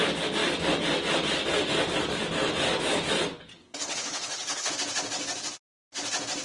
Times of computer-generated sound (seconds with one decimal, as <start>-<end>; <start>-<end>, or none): 3.5-4.7